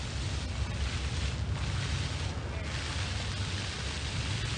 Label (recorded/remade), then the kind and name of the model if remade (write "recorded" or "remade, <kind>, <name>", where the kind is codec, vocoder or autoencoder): recorded